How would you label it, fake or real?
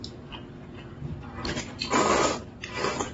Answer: real